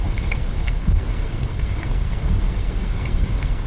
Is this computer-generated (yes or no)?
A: yes